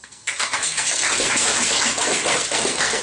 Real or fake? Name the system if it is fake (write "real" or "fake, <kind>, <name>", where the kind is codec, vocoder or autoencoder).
fake, codec, SNAC